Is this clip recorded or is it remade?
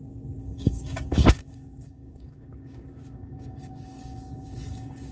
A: remade